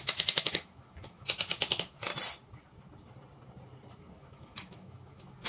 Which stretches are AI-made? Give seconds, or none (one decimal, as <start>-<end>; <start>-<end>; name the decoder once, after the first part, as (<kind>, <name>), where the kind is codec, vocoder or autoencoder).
0.0-2.1 (autoencoder, DAC-VAE); 4.2-5.5